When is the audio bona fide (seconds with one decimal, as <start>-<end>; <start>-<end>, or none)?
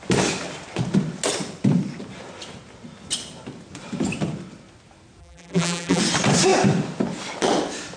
0.0-5.2; 6.0-8.0